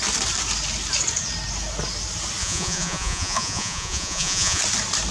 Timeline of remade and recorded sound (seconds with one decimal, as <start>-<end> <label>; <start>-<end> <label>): 0.0-2.4 recorded; 2.4-4.6 remade; 4.6-5.1 recorded